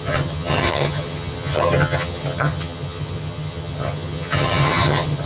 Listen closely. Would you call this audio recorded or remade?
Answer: remade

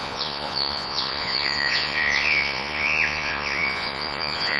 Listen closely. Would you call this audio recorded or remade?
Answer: remade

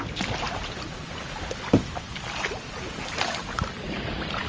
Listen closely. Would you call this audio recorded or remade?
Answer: recorded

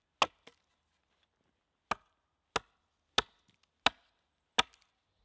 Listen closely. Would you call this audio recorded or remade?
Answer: recorded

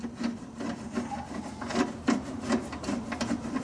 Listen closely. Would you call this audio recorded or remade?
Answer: recorded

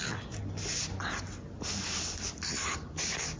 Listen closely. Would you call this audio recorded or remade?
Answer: recorded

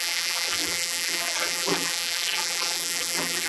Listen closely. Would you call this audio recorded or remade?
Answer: remade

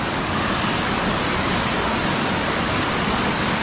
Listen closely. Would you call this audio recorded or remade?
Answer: remade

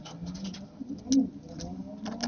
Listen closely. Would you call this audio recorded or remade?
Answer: recorded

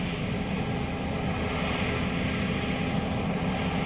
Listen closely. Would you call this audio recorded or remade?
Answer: recorded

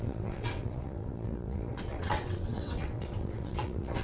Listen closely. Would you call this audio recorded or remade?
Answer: remade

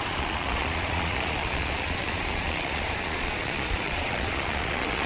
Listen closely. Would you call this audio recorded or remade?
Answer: remade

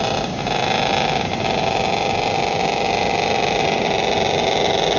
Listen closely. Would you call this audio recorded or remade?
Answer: recorded